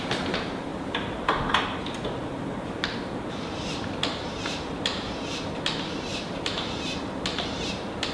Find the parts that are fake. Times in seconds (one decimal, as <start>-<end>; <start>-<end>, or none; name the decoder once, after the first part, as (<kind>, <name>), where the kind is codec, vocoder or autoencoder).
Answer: 0.7-1.6 (vocoder, BigVGAN v2); 6.1-7.0